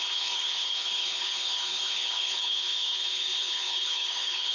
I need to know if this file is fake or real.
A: fake